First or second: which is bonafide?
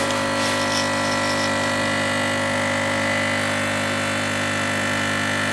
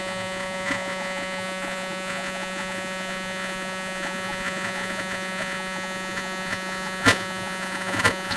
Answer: first